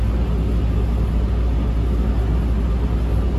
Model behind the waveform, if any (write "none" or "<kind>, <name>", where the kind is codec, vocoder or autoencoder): none